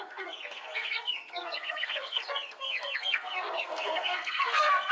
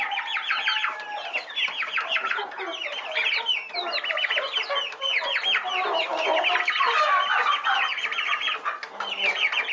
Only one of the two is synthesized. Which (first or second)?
first